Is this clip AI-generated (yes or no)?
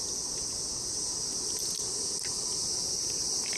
no